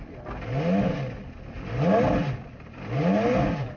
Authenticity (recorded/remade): recorded